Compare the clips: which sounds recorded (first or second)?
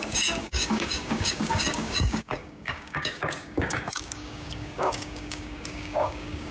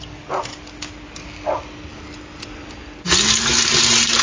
second